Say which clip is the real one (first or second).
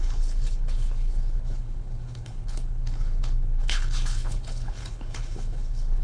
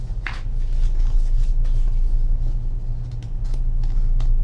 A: second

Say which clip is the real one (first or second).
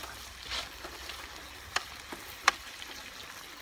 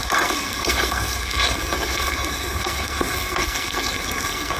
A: first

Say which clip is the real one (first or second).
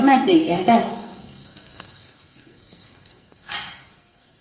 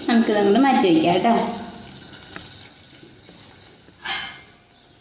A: second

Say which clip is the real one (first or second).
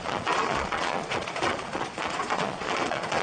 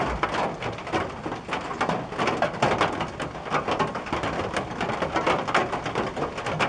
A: second